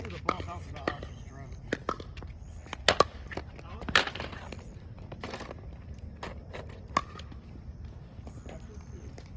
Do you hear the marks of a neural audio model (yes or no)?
yes